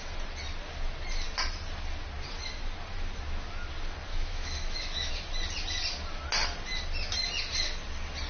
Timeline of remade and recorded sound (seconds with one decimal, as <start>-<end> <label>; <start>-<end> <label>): 0.0-4.1 recorded; 4.1-5.1 remade; 5.1-8.3 recorded